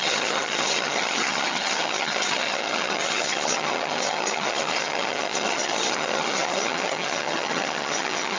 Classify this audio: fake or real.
fake